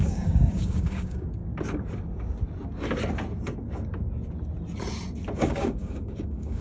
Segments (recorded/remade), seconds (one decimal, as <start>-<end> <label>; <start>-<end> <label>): 0.0-1.4 remade; 1.4-5.4 recorded; 5.4-6.6 remade